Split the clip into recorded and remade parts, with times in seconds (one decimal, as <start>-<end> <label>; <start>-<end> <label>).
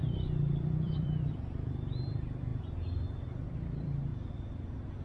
0.0-2.5 remade; 2.5-3.5 recorded; 3.5-4.1 remade; 4.1-5.0 recorded